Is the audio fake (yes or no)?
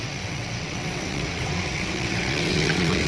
yes